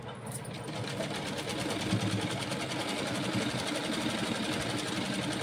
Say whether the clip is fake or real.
real